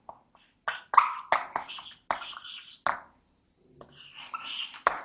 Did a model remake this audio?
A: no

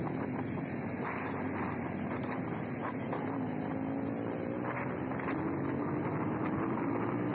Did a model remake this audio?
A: no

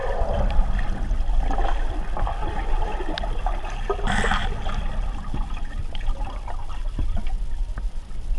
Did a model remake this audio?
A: no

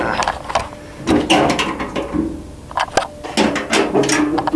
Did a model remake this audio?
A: no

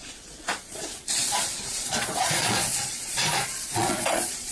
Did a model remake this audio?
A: yes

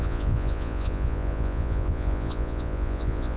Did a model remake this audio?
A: yes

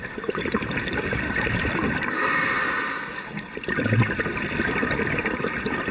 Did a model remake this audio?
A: no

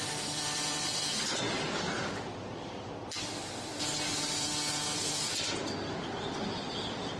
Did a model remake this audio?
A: no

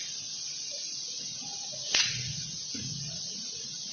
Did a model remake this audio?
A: yes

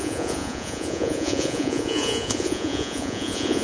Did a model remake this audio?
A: yes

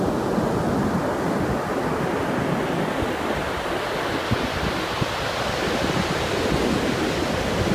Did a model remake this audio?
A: no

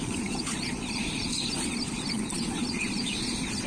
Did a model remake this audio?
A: yes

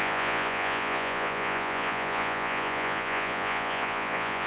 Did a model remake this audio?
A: yes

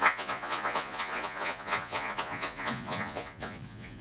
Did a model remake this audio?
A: yes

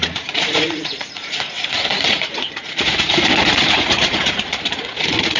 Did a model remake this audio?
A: yes